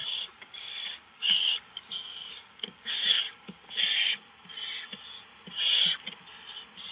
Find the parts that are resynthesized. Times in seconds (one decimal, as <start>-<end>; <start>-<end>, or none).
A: 0.0-4.1